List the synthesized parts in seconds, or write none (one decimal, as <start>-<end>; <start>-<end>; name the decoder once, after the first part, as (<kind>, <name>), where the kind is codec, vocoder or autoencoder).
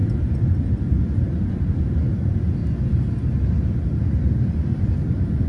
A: 0.0-2.6 (vocoder, BigVGAN v2); 4.0-5.5